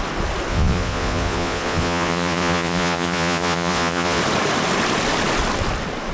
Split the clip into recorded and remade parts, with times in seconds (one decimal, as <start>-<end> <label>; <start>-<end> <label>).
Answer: 0.0-0.5 recorded; 0.5-4.2 remade; 4.2-6.1 recorded